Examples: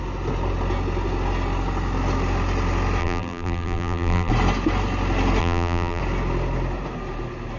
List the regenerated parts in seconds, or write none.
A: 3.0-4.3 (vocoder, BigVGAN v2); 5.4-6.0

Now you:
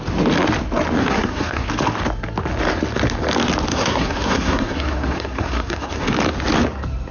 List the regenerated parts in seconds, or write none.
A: 1.0-1.7 (codec, SNAC); 3.7-6.1

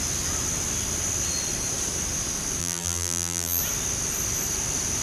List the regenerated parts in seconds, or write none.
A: 2.6-3.6 (vocoder, BigVGAN v2)

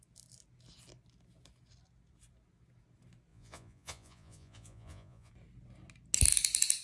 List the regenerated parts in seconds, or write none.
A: 3.3-5.3 (vocoder, Vocos)

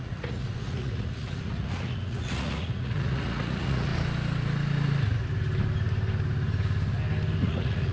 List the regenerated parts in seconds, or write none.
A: 0.0-3.9 (vocoder, Vocos); 7.4-7.9

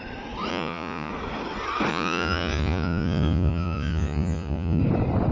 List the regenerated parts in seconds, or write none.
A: 0.5-1.1 (vocoder, Vocos); 1.9-4.8

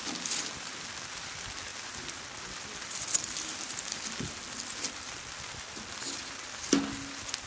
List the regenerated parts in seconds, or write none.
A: none